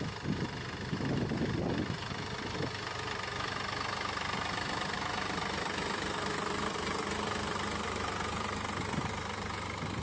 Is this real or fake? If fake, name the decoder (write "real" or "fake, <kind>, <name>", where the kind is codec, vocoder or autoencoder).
real